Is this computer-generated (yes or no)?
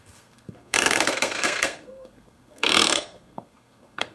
yes